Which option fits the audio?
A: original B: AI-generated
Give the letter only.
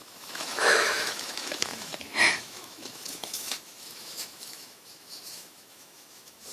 B